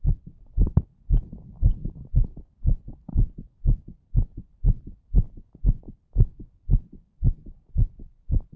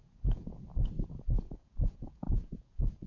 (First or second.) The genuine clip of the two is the first